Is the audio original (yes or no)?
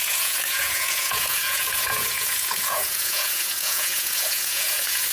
no